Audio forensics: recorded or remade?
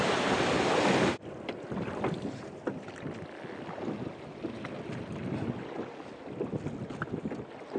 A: recorded